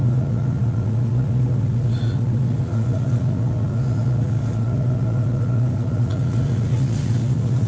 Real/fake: fake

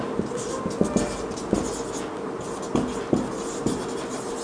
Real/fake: real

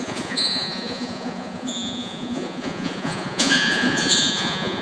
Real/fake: fake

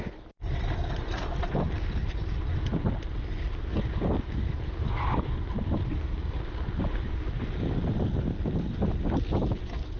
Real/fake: real